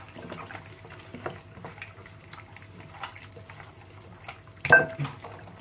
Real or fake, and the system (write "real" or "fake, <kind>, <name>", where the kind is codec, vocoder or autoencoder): real